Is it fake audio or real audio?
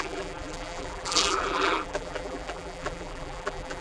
fake